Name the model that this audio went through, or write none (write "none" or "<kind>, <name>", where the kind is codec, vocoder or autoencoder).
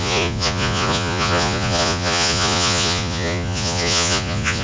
vocoder, Vocos